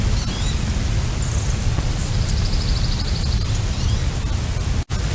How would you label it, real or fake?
real